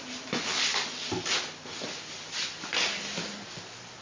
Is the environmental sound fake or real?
real